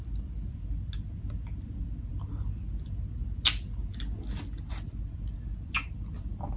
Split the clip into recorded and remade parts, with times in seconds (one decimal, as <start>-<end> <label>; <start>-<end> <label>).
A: 0.0-6.6 recorded